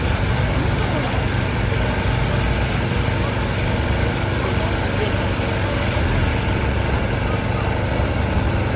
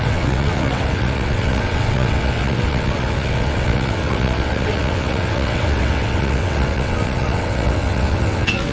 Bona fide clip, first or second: first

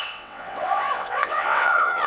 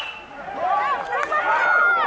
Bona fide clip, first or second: second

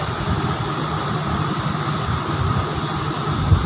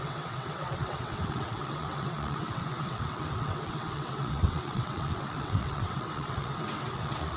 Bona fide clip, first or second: first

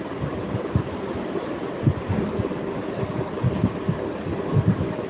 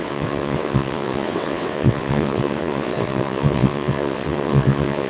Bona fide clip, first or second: first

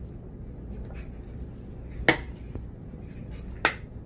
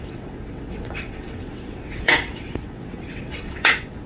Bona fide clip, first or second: first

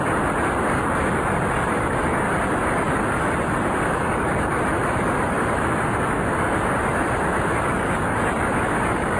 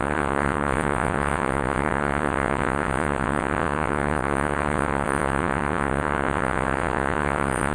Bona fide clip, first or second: first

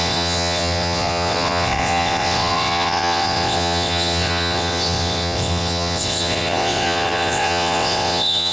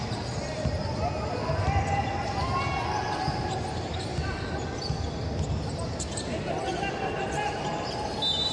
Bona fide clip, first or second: second